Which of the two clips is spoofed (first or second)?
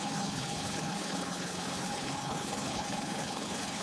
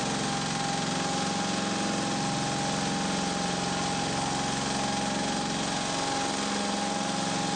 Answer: first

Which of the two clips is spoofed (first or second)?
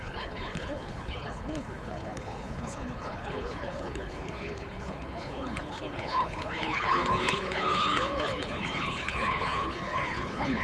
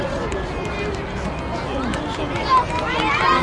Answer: first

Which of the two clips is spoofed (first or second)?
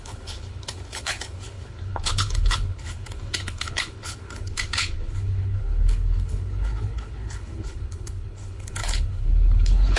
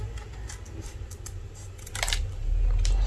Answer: first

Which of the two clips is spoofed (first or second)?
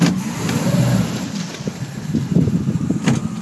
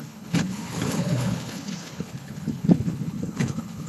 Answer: second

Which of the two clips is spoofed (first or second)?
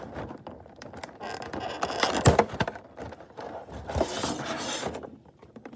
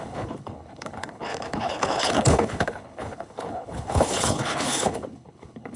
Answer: second